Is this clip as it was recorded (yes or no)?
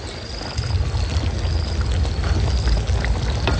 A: yes